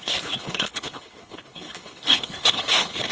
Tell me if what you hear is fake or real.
fake